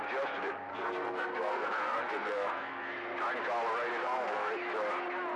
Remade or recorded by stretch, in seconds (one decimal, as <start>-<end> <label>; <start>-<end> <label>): 0.0-0.7 recorded; 0.7-2.9 remade; 2.9-4.0 recorded; 4.0-4.5 remade; 4.5-5.4 recorded